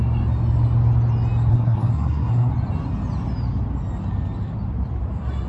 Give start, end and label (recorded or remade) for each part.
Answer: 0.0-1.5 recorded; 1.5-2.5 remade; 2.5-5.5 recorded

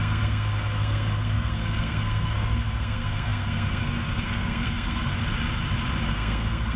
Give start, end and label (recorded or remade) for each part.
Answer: 0.0-5.2 remade; 5.2-6.1 recorded; 6.1-6.8 remade